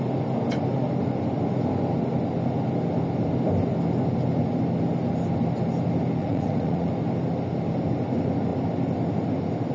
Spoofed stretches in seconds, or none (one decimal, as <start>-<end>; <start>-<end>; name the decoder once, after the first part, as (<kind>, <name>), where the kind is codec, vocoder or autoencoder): 6.2-6.9 (vocoder, Vocos)